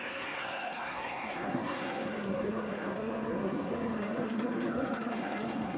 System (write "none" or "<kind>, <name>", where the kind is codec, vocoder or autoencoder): codec, SNAC